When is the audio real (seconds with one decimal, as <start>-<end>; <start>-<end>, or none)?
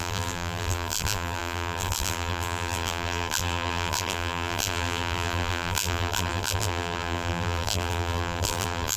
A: none